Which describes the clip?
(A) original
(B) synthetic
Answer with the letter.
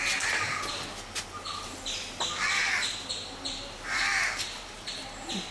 A